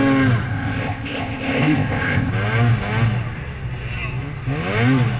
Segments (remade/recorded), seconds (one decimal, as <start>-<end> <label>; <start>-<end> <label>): 0.0-0.5 recorded; 0.5-2.3 remade; 2.3-5.2 recorded